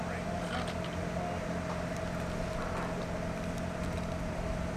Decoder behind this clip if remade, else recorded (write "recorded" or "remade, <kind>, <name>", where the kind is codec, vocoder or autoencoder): recorded